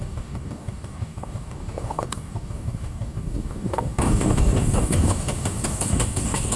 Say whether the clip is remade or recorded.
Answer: remade